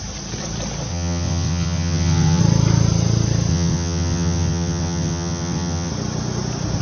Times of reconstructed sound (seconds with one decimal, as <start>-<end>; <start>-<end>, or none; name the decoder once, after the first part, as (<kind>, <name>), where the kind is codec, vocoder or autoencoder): 0.9-2.4 (vocoder, WaveNeXt); 3.5-5.9